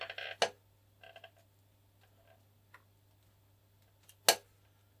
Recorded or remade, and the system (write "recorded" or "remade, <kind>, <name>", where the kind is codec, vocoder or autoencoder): recorded